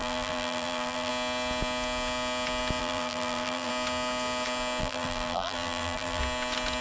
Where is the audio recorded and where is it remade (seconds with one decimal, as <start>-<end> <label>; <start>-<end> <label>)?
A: 0.0-1.1 remade; 1.1-2.8 recorded; 2.8-3.7 remade; 3.7-4.8 recorded; 4.8-6.2 remade; 6.2-6.8 recorded

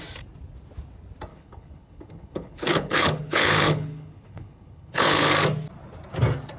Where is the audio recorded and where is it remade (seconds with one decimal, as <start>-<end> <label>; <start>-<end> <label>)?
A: 0.0-1.3 recorded; 1.3-5.3 remade; 5.3-6.6 recorded

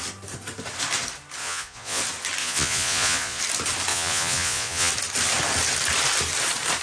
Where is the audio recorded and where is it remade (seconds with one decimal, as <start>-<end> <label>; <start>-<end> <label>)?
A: 0.0-1.4 recorded; 1.4-2.0 remade; 2.0-2.4 recorded; 2.4-3.4 remade; 3.4-3.9 recorded; 3.9-4.9 remade; 4.9-6.8 recorded

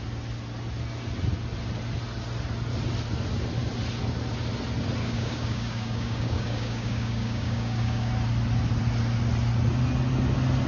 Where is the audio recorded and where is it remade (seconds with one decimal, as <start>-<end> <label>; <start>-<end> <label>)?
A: 0.0-5.0 recorded; 5.0-8.1 remade; 8.1-10.7 recorded